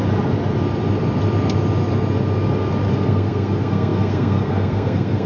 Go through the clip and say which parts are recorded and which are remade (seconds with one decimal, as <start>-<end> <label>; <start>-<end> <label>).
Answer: 0.0-2.9 recorded; 2.9-5.3 remade